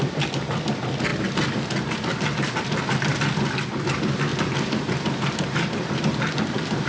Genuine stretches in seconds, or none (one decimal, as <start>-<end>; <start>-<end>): 1.1-3.8